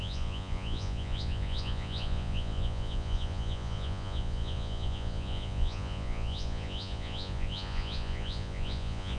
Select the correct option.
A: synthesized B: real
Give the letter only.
A